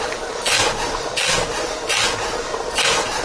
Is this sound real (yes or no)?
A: yes